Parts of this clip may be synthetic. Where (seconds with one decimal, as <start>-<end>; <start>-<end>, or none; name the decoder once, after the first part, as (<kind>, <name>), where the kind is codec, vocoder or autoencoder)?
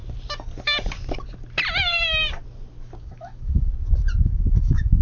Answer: 3.0-3.7 (autoencoder, DAC-VAE); 4.2-5.0